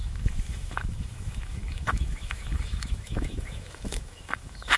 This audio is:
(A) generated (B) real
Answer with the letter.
A